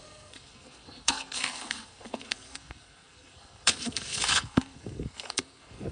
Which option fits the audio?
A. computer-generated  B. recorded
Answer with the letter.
A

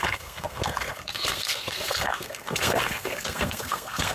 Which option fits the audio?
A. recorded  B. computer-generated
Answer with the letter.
B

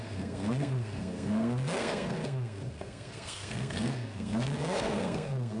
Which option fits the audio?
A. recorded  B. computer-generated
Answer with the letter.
B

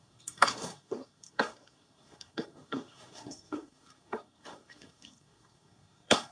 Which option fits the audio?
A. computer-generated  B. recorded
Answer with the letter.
A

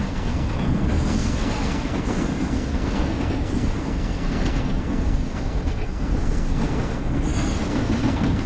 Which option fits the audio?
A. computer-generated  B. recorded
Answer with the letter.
A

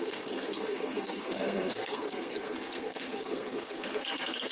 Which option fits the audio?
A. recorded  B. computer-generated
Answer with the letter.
B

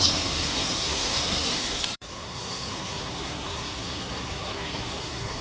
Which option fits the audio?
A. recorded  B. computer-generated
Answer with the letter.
B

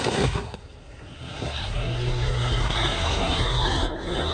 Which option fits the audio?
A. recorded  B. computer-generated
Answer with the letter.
B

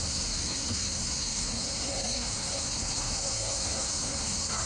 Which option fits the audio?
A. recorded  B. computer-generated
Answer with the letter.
B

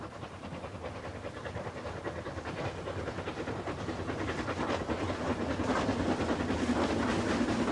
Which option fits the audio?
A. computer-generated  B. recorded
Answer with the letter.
B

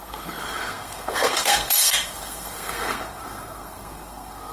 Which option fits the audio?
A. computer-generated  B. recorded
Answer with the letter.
A